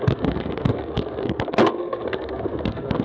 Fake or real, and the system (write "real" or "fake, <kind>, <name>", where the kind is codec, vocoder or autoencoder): fake, codec, SNAC